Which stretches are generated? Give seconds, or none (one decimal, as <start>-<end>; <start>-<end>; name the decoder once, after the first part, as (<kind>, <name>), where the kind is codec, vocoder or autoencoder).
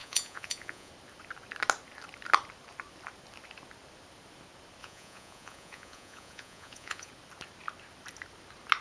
0.0-0.9 (vocoder, Vocos); 4.8-7.1